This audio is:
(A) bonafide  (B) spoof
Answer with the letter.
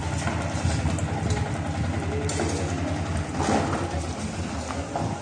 A